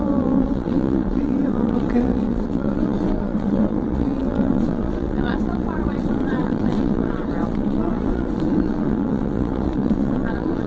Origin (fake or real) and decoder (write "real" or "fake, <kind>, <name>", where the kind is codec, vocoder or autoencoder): fake, vocoder, WaveNeXt